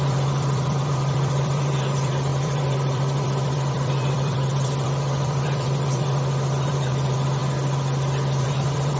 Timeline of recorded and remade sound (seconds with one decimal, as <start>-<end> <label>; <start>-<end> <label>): 0.0-7.4 remade; 7.4-8.4 recorded; 8.4-9.0 remade